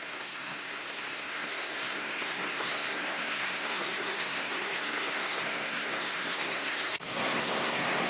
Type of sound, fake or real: fake